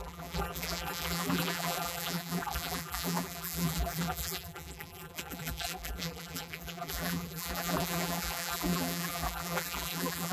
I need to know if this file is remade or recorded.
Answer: remade